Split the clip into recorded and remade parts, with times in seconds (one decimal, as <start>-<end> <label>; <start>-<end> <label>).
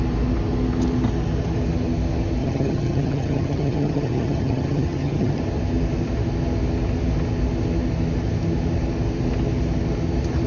0.0-2.4 recorded; 2.4-5.4 remade; 5.4-10.5 recorded